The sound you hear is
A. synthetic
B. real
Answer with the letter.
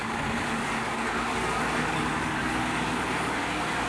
A